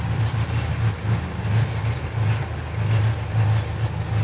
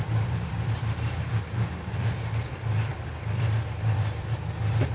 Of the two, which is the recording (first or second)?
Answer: first